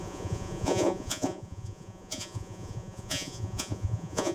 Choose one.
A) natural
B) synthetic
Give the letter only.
B